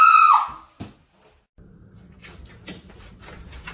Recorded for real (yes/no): yes